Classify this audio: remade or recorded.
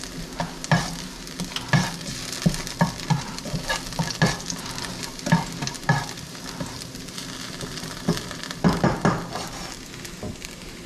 recorded